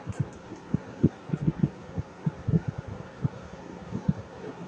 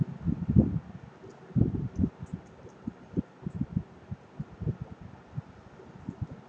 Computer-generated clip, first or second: first